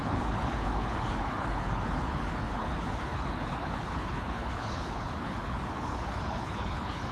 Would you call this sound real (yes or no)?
no